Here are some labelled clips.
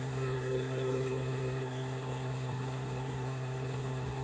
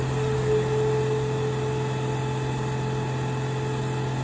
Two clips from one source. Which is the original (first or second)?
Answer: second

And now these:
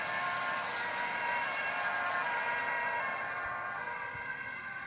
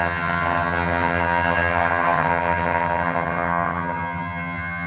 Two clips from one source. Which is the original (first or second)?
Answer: first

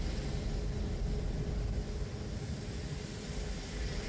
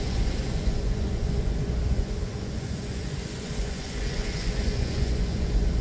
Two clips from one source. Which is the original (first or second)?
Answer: first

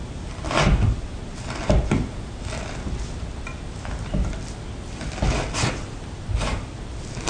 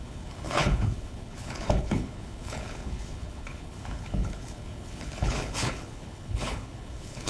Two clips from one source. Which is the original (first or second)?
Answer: first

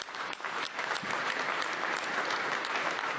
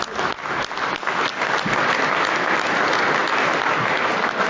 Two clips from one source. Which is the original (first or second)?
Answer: second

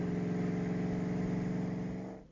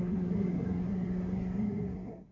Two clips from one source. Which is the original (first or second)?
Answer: first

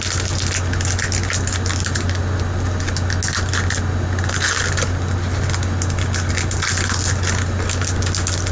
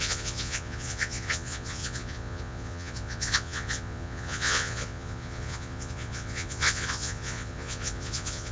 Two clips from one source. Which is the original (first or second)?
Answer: first